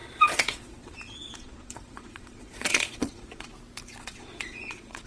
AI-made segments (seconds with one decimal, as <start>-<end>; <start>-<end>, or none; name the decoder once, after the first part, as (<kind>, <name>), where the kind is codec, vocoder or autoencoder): 0.0-3.5 (vocoder, Vocos); 4.0-5.1